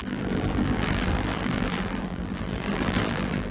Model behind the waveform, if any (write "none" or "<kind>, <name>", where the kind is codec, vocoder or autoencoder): vocoder, BigVGAN v2